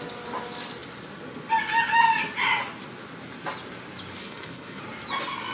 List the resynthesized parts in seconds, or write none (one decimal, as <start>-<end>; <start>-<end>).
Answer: 4.2-4.8